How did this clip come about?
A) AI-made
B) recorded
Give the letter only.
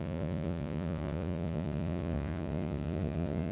A